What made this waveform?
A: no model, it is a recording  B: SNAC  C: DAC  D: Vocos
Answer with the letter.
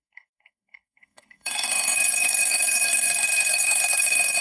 B